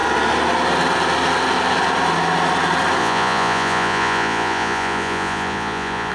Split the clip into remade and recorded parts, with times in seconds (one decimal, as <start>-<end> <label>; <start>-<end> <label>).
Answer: 0.0-3.0 recorded; 3.0-6.1 remade